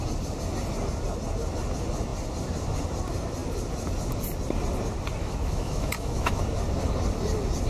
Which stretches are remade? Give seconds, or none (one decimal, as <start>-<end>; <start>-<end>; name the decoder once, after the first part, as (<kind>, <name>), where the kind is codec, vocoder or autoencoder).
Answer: 5.2-6.4 (autoencoder, DAC-VAE)